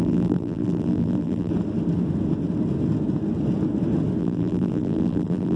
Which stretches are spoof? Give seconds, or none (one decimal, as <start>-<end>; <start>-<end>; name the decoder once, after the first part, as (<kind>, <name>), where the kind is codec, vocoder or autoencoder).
0.0-1.5 (vocoder, BigVGAN v2); 4.2-5.6